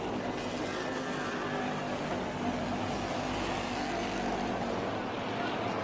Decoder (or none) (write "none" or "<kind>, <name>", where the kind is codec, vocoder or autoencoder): none